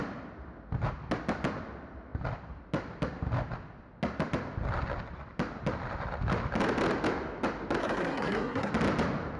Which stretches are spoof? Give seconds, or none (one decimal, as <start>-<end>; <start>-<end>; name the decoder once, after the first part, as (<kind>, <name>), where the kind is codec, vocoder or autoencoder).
7.8-8.7 (codec, SNAC)

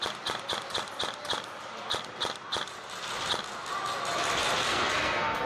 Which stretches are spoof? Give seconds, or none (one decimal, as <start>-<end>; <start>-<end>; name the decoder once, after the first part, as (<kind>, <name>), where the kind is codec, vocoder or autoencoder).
4.6-5.5 (codec, SNAC)